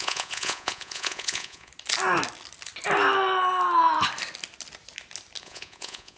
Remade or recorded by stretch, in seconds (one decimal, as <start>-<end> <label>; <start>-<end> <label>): 0.0-1.7 remade; 1.7-5.4 recorded; 5.4-6.2 remade